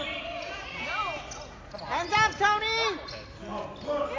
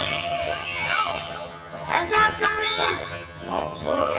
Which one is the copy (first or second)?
second